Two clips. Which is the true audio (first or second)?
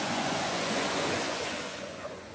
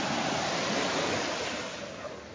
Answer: second